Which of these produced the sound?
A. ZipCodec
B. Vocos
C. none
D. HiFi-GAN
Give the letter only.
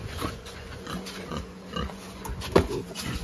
B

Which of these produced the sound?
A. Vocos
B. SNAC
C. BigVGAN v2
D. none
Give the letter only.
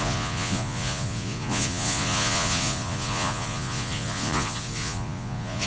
A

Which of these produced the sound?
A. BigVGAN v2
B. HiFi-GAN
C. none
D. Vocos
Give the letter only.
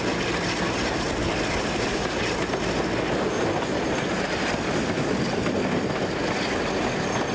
C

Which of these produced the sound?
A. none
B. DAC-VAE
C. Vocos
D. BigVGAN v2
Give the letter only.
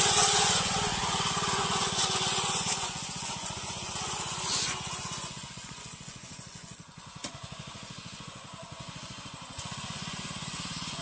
C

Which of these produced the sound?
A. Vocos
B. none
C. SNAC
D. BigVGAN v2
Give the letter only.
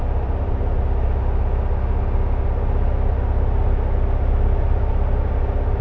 B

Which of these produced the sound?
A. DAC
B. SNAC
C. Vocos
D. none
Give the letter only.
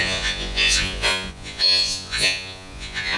C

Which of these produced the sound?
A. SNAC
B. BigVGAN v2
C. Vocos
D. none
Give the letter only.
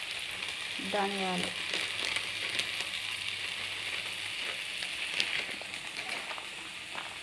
D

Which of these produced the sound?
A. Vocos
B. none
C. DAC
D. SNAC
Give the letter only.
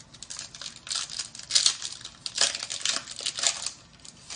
B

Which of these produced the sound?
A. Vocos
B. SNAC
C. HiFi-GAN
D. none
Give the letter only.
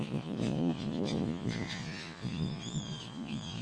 A